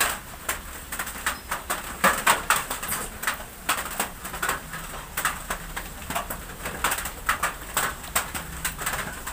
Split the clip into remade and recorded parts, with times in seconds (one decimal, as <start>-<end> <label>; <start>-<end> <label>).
0.0-9.3 remade